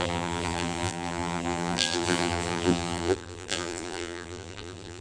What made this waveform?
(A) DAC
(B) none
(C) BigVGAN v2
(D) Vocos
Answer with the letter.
C